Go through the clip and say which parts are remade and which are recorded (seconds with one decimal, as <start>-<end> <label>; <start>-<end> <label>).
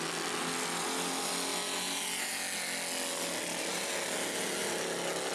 0.0-5.3 recorded